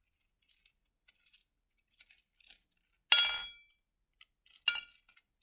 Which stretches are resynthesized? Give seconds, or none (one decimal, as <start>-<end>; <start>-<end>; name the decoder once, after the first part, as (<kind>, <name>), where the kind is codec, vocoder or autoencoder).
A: none